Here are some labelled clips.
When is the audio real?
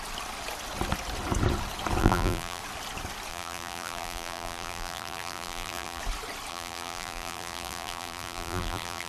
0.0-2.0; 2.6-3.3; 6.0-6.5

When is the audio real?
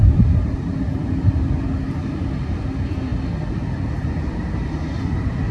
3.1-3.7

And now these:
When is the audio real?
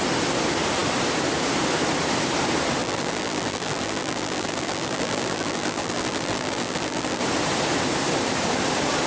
0.0-2.8; 7.2-9.1